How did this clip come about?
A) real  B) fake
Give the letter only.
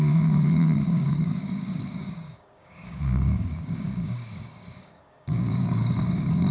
B